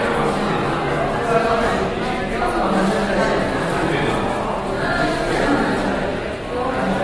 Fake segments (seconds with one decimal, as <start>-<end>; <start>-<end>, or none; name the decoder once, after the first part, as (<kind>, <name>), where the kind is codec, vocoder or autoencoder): none